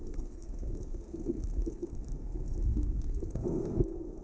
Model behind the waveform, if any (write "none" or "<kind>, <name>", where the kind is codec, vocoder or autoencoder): codec, SNAC